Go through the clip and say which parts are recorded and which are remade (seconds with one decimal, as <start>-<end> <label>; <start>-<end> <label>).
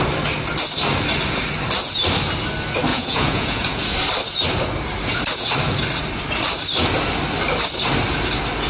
0.0-2.9 recorded; 2.9-3.8 remade; 3.8-8.7 recorded